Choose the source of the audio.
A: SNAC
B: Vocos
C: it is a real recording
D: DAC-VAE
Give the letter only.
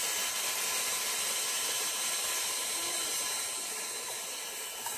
C